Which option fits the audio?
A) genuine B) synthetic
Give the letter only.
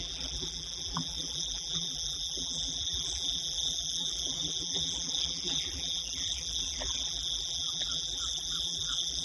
B